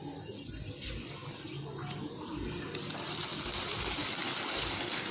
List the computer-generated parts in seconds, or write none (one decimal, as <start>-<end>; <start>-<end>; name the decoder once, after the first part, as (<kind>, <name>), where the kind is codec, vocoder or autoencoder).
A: none